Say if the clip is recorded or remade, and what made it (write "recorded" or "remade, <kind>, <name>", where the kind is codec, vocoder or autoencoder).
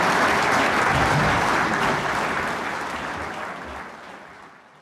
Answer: recorded